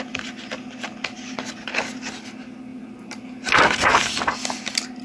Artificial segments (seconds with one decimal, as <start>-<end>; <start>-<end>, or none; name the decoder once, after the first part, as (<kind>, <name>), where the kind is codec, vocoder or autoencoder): none